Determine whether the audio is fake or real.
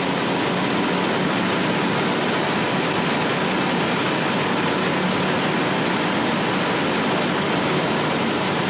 real